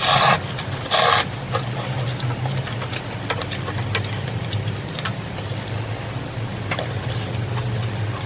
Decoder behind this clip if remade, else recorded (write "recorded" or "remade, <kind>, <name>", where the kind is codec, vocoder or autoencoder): recorded